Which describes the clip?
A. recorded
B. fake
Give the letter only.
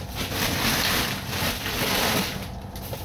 A